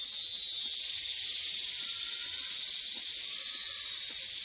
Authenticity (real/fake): real